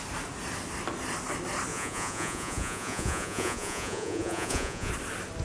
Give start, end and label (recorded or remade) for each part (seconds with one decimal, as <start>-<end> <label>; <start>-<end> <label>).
0.0-1.7 recorded; 1.7-4.9 remade; 4.9-5.4 recorded

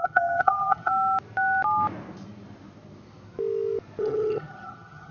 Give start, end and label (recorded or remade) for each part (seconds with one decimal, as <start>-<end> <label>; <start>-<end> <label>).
0.0-0.9 remade; 0.9-4.0 recorded; 4.0-5.1 remade

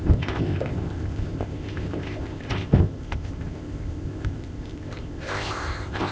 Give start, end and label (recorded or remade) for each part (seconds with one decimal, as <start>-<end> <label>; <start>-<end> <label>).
0.0-6.1 remade

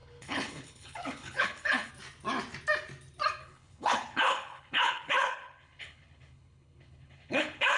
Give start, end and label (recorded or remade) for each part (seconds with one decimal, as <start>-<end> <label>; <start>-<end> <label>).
0.0-1.9 remade; 1.9-3.4 recorded; 3.4-7.8 remade

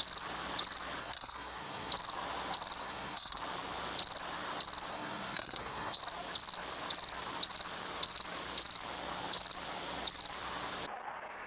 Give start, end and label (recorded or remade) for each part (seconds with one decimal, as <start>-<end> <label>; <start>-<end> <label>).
0.0-1.0 recorded; 1.0-1.9 remade; 1.9-2.8 recorded; 2.8-3.4 remade; 3.4-4.9 recorded; 4.9-6.0 remade; 6.0-11.5 recorded